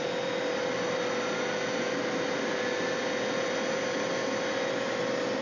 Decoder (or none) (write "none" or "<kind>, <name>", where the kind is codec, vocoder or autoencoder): none